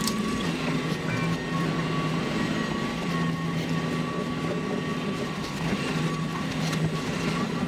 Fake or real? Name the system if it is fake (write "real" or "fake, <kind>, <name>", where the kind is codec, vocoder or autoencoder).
real